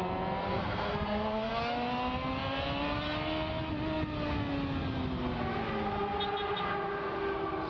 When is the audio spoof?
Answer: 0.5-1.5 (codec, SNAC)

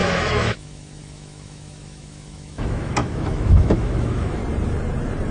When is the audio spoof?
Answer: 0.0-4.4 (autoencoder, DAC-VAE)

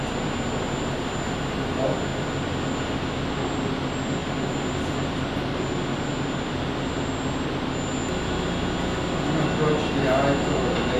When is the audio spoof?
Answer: none

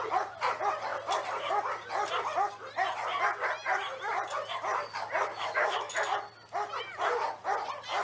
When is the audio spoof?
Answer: 5.3-5.9 (autoencoder, DAC-VAE)

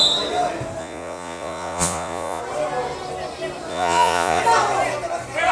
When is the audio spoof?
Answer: 0.8-2.4 (vocoder, Vocos); 3.7-4.4

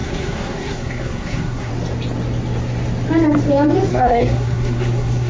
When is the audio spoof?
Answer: 0.0-1.7 (codec, SNAC); 3.9-5.3

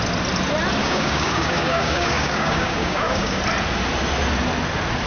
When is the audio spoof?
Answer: 0.8-3.4 (codec, DAC)

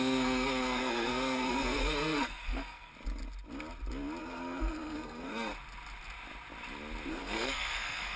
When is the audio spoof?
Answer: 0.0-2.9 (codec, SNAC); 4.2-5.5; 7.1-8.2